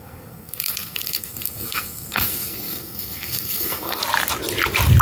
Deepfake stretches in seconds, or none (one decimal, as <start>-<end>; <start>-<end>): 0.0-4.0